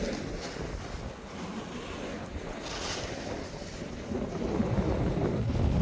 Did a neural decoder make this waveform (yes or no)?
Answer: no